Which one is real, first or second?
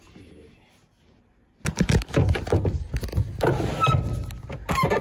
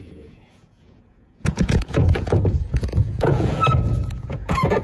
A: first